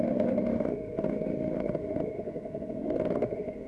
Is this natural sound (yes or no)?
no